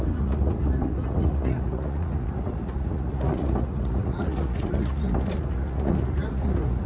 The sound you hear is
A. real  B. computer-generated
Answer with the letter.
B